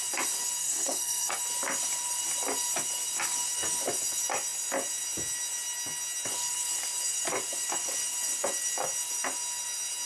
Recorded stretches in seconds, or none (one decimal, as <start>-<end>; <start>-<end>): 0.0-0.6; 1.4-10.1